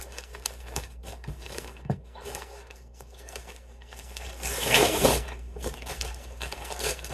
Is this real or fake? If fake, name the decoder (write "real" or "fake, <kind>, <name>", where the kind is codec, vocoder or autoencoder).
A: fake, codec, SNAC